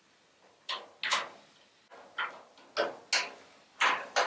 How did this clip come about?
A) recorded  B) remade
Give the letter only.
A